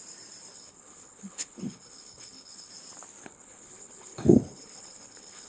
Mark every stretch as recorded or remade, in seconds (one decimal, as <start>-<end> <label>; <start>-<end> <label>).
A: 0.0-0.5 recorded; 0.5-2.7 remade; 2.7-3.2 recorded; 3.2-5.5 remade